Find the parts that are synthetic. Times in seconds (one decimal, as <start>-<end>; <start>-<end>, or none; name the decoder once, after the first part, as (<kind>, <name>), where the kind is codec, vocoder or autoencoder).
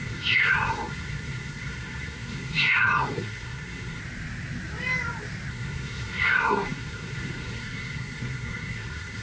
0.0-4.0 (codec, SNAC); 5.5-9.2